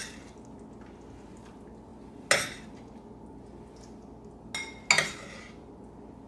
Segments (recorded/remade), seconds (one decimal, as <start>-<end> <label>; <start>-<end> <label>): 0.0-6.3 recorded